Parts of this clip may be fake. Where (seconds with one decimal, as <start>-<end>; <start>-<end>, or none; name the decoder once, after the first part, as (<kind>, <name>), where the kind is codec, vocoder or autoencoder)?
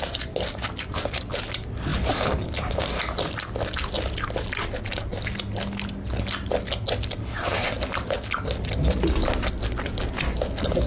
none